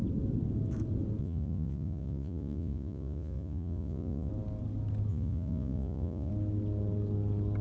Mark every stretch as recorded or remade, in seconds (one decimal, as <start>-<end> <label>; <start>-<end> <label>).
0.0-1.2 recorded; 1.2-4.3 remade; 4.3-5.1 recorded; 5.1-6.3 remade; 6.3-7.6 recorded